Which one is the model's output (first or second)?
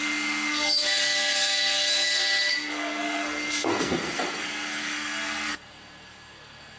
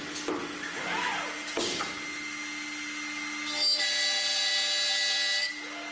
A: first